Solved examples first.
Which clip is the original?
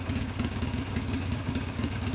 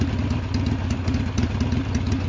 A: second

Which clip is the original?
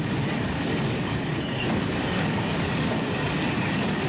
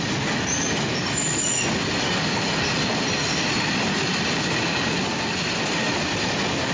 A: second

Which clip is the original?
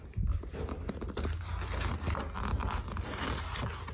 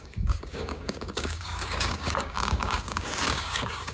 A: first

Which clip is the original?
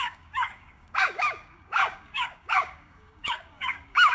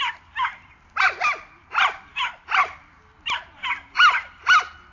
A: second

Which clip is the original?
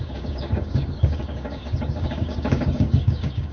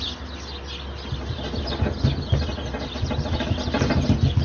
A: second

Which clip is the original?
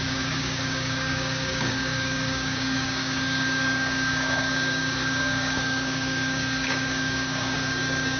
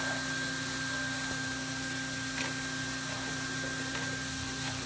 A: second